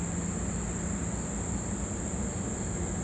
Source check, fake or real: real